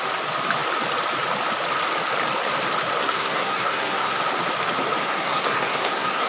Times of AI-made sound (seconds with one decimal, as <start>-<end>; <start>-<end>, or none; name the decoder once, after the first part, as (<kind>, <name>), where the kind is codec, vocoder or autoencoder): 3.0-4.2 (codec, SNAC); 5.0-6.3